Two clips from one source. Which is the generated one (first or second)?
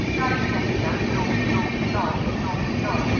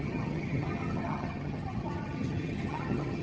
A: second